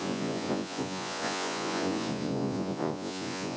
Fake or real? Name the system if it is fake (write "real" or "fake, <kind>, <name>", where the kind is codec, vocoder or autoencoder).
fake, vocoder, Vocos